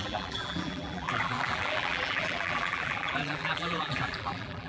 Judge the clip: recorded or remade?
remade